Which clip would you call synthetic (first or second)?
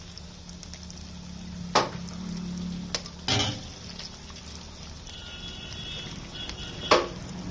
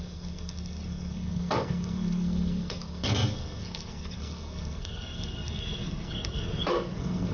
second